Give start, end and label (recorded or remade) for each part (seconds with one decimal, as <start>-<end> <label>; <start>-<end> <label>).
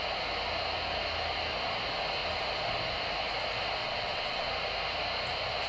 0.0-3.8 recorded; 3.8-4.5 remade; 4.5-5.7 recorded